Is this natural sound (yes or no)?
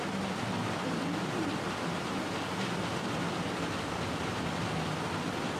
yes